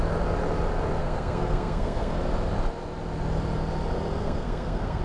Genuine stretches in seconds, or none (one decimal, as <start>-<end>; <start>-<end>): 0.0-1.0; 2.2-4.2

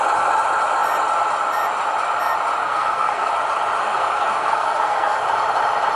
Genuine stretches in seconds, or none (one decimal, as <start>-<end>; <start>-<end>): 0.0-2.6; 3.3-3.8; 5.2-6.0

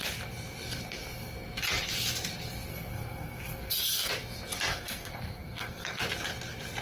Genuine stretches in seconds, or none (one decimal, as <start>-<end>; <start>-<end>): 0.0-2.7; 4.1-4.7; 6.0-6.8

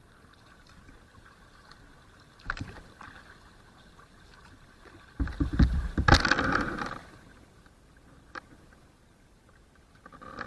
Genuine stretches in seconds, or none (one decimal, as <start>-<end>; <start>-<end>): 0.0-10.5